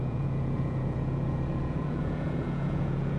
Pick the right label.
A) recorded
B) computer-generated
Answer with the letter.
B